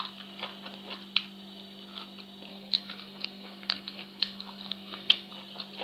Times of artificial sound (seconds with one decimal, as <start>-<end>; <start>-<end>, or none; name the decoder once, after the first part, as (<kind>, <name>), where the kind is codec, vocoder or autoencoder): 2.5-5.3 (codec, SNAC)